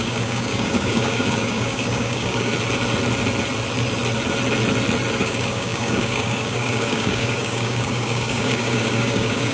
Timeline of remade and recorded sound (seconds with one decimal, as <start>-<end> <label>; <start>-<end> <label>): 0.0-2.5 remade; 2.5-5.2 recorded; 5.2-9.5 remade